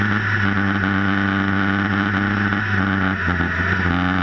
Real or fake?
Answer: real